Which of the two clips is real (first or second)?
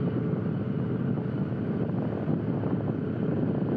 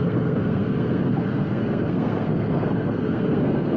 first